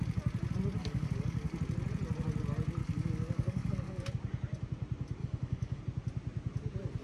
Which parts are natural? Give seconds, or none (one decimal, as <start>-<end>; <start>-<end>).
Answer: 0.0-0.8; 1.6-2.8; 4.1-5.2; 5.8-7.0